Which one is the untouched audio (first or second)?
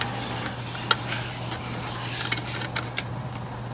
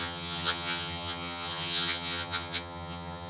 first